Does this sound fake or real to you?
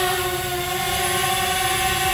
fake